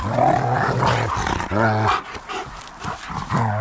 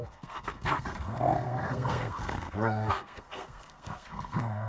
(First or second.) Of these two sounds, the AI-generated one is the second